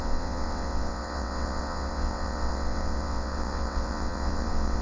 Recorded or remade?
remade